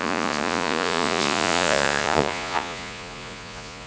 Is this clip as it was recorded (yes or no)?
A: no